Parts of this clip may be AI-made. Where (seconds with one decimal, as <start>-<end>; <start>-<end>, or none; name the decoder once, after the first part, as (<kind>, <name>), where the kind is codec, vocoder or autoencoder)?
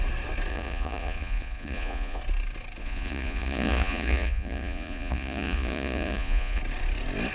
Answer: 0.5-2.2 (vocoder, Vocos); 2.8-6.6